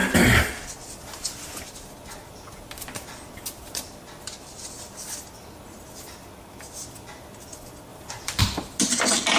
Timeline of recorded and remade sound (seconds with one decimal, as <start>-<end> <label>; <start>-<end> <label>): 0.0-7.9 recorded; 7.9-8.4 remade; 8.4-9.4 recorded